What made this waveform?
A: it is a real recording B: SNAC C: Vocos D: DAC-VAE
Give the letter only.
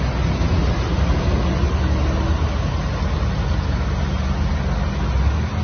A